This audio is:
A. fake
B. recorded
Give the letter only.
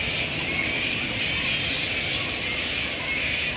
B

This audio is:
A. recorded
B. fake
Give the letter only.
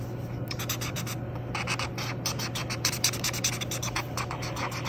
A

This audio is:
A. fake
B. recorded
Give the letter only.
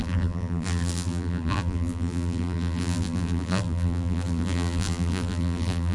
A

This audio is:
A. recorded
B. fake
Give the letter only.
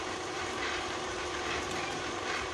B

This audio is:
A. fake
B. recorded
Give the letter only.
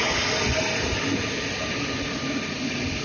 B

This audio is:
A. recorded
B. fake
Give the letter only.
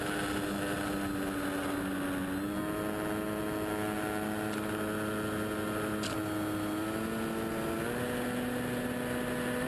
A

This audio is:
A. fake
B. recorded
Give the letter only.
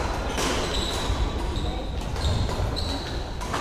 B